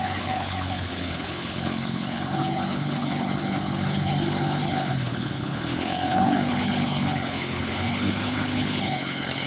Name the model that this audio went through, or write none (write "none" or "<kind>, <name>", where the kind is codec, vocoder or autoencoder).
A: codec, HILCodec